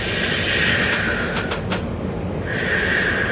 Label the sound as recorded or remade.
recorded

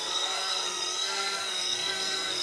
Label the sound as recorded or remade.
remade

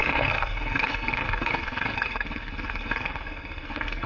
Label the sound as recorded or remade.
remade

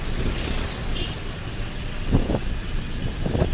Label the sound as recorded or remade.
recorded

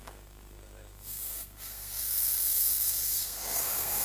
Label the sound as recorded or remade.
remade